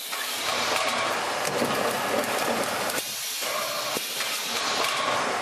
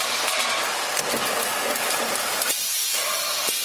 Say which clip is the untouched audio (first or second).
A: second